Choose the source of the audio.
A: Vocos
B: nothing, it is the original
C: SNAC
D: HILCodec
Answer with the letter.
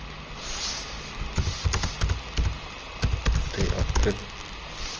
B